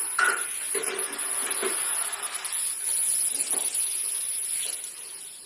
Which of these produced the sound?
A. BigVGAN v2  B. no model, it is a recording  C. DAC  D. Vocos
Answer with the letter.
B